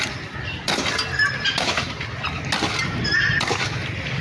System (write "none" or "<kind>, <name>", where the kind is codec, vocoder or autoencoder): none